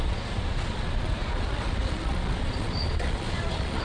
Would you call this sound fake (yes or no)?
yes